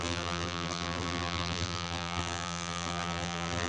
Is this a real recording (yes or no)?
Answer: no